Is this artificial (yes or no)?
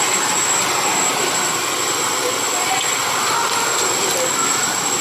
no